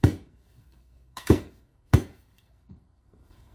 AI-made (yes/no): yes